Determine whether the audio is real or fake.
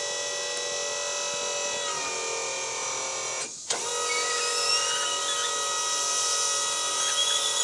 real